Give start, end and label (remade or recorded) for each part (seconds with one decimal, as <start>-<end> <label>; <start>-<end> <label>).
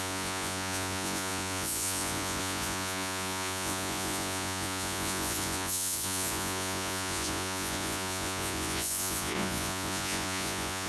0.0-10.9 remade